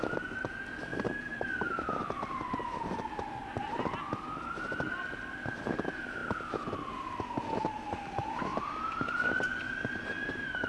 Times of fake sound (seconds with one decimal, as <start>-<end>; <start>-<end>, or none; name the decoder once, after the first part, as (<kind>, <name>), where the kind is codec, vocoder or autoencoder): 0.9-1.7 (vocoder, BigVGAN v2); 8.5-10.7